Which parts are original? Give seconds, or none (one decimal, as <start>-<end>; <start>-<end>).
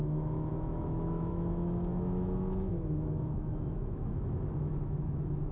none